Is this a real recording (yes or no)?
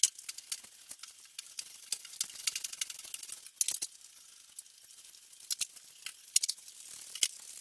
yes